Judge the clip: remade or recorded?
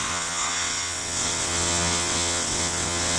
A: remade